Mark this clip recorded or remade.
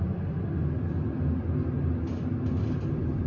recorded